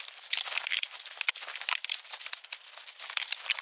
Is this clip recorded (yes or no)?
yes